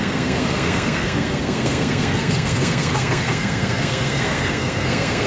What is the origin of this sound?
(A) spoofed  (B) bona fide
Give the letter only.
A